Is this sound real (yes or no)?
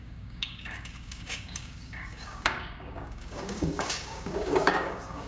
no